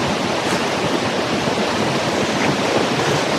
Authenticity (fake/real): real